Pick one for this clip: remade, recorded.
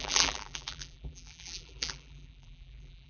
remade